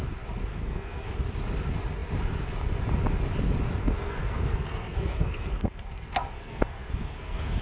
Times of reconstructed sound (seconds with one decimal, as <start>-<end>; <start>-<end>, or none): 0.5-1.1; 3.8-7.6